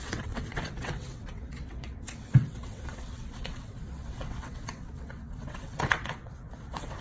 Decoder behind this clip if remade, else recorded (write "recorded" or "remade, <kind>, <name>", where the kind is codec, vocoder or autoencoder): remade, vocoder, WaveNeXt